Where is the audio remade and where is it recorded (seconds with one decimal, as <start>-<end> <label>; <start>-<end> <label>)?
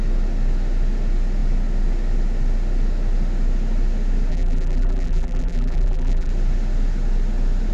0.0-4.3 recorded; 4.3-6.3 remade; 6.3-7.7 recorded